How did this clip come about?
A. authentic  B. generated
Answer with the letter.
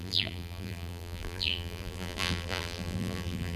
B